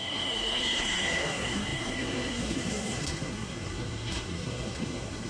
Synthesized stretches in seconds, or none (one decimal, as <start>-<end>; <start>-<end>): 0.0-5.3